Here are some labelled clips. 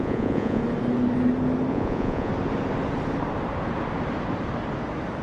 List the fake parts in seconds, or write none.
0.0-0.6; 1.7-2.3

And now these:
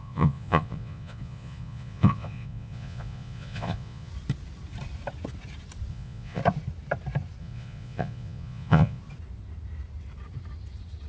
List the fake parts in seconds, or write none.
0.0-4.1; 5.9-6.4; 7.4-9.0

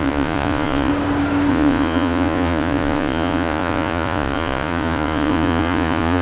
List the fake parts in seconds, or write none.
0.0-0.9; 1.5-6.2

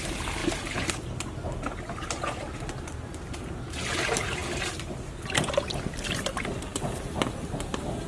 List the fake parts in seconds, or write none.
none